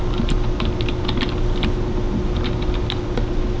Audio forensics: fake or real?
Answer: real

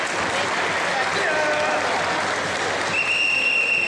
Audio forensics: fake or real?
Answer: real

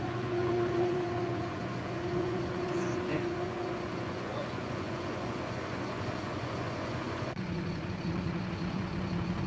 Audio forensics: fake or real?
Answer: fake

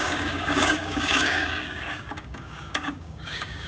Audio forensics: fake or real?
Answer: fake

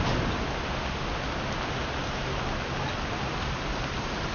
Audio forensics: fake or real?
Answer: real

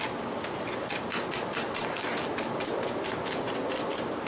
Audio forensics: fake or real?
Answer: real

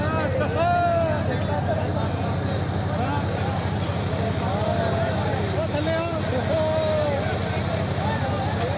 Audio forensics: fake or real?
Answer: real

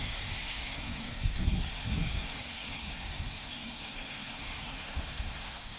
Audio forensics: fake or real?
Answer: fake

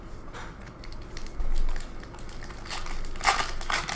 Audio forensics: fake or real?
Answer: real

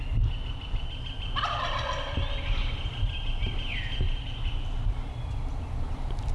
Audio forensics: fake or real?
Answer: real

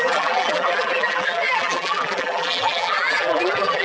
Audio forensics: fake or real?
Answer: fake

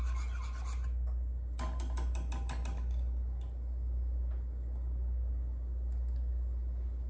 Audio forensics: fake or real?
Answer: real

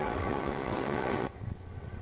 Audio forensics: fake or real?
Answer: fake